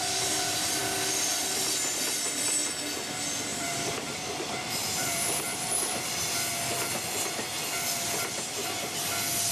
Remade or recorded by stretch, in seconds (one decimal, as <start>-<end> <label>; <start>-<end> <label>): 0.0-0.8 remade; 0.8-3.5 recorded; 3.5-4.1 remade; 4.1-4.8 recorded; 4.8-5.4 remade; 5.4-9.5 recorded

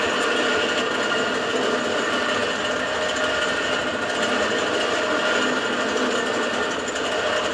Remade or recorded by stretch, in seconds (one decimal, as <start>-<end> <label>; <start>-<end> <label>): 0.0-7.5 recorded

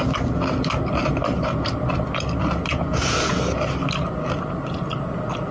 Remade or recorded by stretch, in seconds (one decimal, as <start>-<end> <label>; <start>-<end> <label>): 0.0-2.7 recorded; 2.7-3.3 remade; 3.3-5.5 recorded

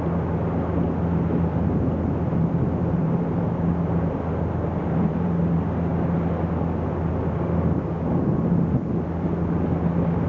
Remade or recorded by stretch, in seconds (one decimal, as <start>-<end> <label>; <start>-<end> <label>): 0.0-2.8 recorded; 2.8-3.7 remade; 3.7-4.8 recorded; 4.8-5.4 remade; 5.4-10.3 recorded